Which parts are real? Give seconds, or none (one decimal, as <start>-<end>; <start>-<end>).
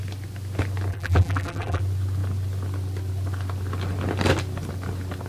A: 0.0-0.9; 1.8-5.3